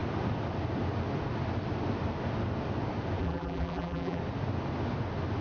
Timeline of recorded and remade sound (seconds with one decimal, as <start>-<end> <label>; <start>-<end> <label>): 0.0-3.2 recorded; 3.2-4.2 remade; 4.2-5.4 recorded